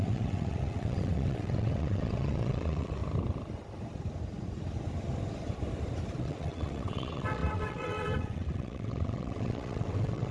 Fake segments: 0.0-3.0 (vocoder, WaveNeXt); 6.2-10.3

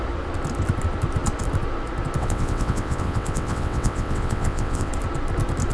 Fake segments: 2.2-4.9 (vocoder, WaveNeXt)